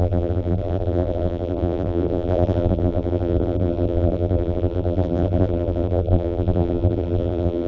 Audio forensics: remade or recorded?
remade